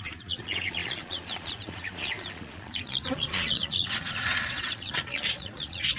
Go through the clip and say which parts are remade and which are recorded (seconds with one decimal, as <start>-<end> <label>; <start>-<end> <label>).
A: 0.0-6.0 remade